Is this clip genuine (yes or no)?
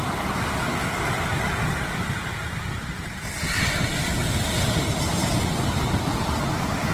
yes